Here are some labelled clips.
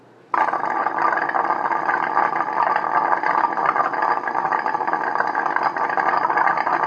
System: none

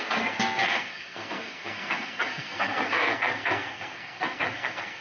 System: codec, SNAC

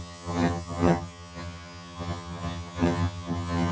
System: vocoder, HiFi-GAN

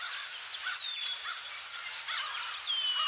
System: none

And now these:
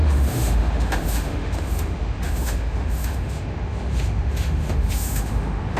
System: autoencoder, DAC-VAE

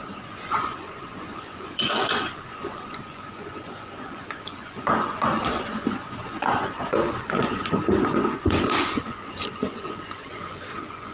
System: vocoder, Vocos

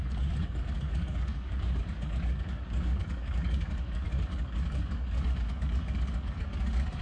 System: codec, DAC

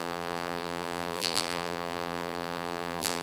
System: vocoder, BigVGAN v2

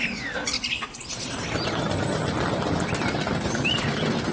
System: vocoder, BigVGAN v2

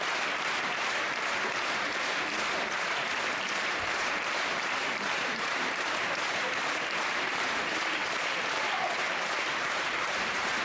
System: vocoder, BigVGAN v2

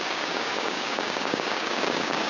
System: codec, DAC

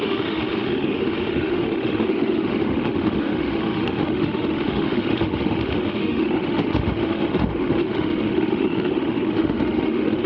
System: autoencoder, DAC-VAE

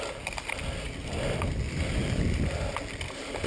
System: none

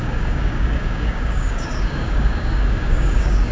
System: codec, DAC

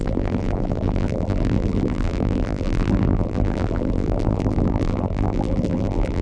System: vocoder, BigVGAN v2